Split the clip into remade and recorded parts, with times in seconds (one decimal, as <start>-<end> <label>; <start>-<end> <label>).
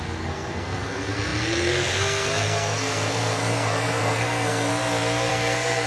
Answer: 0.0-4.7 remade; 4.7-5.3 recorded; 5.3-5.9 remade